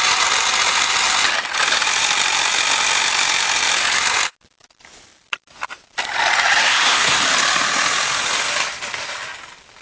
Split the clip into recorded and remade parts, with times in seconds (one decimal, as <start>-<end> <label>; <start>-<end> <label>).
0.0-6.6 recorded; 6.6-7.2 remade; 7.2-9.8 recorded